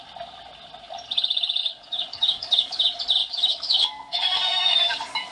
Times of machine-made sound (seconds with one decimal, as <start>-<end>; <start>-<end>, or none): 1.6-2.8; 3.2-5.3